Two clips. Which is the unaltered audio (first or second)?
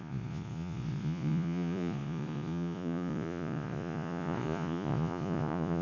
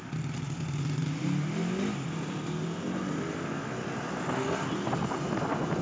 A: second